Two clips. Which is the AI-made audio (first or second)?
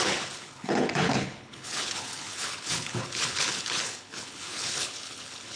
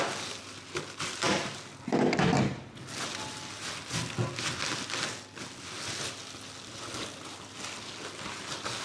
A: first